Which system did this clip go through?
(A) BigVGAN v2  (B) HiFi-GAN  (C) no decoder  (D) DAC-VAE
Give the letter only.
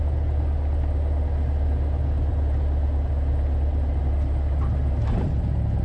C